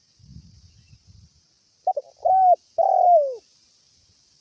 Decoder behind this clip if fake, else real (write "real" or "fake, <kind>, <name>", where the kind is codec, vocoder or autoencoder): real